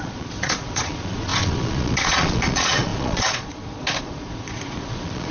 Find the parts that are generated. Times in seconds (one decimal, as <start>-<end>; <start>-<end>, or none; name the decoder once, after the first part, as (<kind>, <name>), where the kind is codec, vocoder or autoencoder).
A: 0.0-5.3 (vocoder, Vocos)